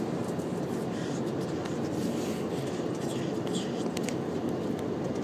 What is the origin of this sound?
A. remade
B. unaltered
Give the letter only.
B